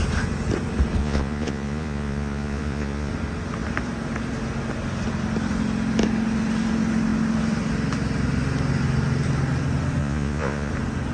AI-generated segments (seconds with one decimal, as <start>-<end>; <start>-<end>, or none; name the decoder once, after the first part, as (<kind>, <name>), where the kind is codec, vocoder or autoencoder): 1.0-3.1 (vocoder, Vocos); 10.0-10.7